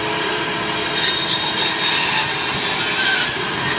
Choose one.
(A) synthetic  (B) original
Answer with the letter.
B